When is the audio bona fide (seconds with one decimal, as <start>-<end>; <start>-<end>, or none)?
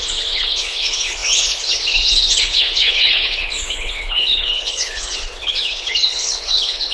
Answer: none